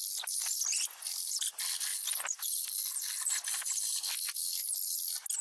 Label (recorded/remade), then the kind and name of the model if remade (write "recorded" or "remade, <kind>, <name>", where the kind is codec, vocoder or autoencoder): recorded